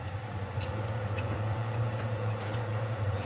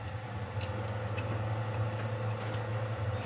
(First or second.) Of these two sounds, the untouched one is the second